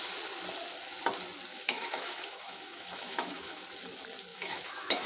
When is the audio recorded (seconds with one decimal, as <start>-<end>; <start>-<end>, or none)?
0.0-1.5; 3.6-4.3